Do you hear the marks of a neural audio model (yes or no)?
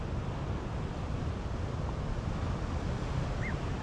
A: no